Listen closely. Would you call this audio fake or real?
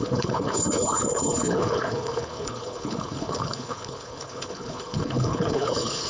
fake